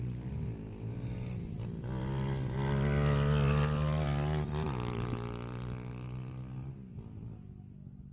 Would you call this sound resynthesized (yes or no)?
no